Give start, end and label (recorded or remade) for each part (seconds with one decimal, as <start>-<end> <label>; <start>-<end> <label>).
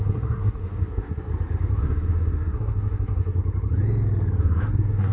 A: 0.0-1.3 remade; 1.3-1.8 recorded; 1.8-3.4 remade; 3.4-4.4 recorded; 4.4-5.1 remade